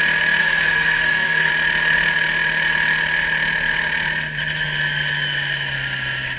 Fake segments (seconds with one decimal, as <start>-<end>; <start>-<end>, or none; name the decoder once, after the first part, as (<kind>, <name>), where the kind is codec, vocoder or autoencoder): 0.4-1.5 (codec, SNAC)